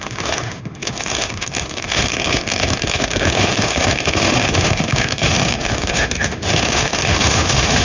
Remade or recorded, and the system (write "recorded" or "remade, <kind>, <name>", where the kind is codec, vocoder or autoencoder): remade, autoencoder, DAC-VAE